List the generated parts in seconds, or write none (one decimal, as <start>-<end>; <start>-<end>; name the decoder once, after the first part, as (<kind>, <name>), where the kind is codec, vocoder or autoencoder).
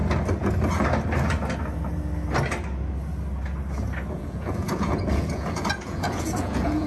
4.1-6.9 (vocoder, Vocos)